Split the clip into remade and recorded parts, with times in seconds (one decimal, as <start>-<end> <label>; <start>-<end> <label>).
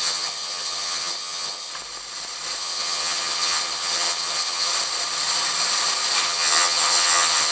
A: 0.0-1.7 remade; 1.7-2.6 recorded; 2.6-4.7 remade; 4.7-6.2 recorded; 6.2-7.5 remade